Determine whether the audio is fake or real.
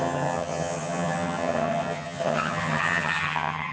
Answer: fake